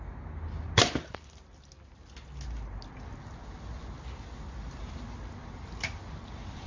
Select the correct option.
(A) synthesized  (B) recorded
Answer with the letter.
B